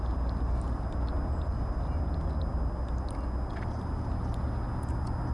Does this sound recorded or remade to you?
recorded